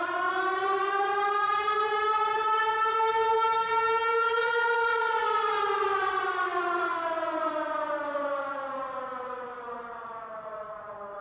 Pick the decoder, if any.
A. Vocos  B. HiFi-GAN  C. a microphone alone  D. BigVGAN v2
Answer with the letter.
C